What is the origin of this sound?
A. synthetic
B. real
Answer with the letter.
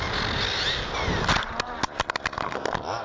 B